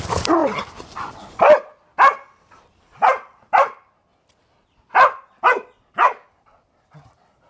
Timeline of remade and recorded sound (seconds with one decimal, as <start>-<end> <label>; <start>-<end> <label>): 0.0-7.5 recorded